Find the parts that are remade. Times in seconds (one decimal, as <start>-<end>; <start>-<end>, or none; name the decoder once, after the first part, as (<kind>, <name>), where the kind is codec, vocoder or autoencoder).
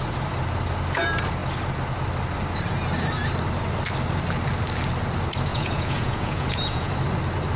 5.5-6.9 (vocoder, Vocos)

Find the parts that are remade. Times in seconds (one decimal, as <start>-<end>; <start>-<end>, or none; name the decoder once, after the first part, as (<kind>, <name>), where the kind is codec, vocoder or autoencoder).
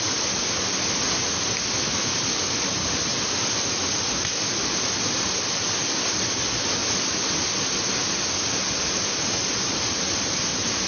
none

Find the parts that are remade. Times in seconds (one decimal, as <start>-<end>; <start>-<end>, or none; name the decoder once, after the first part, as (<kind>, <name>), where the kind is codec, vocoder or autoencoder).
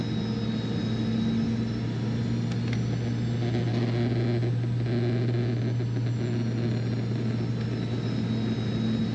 none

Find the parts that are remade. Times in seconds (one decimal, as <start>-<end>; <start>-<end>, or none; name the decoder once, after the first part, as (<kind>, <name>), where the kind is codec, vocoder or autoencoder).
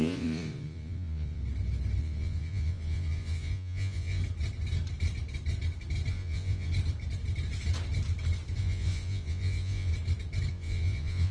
0.0-1.4 (vocoder, Vocos); 2.0-4.2; 6.1-6.7; 8.6-9.9; 10.5-11.3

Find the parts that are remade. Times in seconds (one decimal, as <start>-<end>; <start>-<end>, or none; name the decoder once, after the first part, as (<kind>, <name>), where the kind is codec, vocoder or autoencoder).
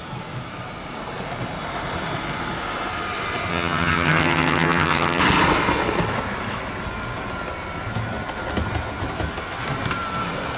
3.5-5.2 (vocoder, HiFi-GAN)